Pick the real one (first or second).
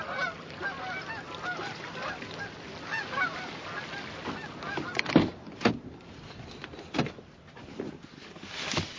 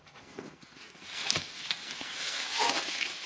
first